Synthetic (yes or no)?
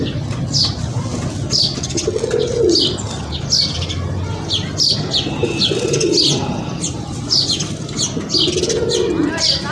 no